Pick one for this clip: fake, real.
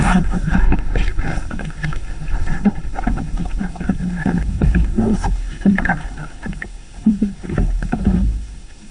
fake